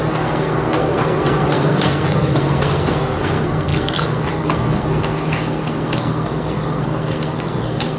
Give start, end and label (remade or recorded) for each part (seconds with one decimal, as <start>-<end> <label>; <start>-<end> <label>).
0.0-8.0 remade